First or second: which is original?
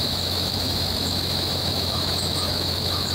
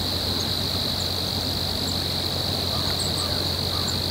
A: second